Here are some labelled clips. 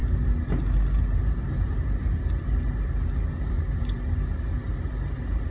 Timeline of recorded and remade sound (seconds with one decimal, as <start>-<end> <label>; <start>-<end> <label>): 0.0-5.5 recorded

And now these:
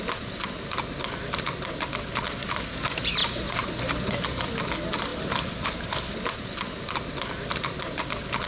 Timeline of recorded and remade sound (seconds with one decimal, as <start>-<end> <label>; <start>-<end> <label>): 0.0-8.5 recorded

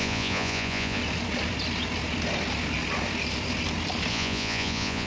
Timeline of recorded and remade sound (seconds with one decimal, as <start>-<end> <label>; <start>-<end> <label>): 0.0-1.0 remade; 1.0-4.1 recorded; 4.1-5.1 remade

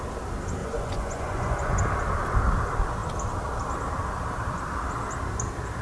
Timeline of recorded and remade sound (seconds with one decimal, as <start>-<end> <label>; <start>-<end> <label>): 0.0-0.6 recorded; 0.6-1.8 remade; 1.8-5.8 recorded